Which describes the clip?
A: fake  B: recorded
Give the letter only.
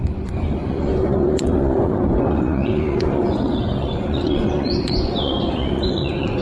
A